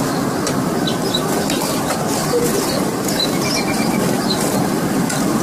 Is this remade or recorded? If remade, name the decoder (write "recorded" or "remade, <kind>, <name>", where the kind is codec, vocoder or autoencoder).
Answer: recorded